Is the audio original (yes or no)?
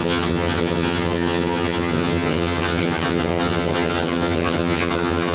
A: no